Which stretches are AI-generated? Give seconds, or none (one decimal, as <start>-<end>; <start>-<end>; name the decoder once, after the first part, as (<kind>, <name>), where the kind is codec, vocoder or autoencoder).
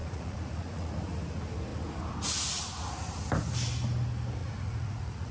0.0-0.9 (vocoder, Vocos); 4.4-5.3